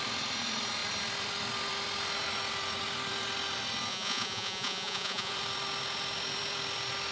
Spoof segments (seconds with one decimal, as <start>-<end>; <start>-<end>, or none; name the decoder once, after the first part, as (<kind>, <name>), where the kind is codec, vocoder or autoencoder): 3.9-5.3 (vocoder, Vocos)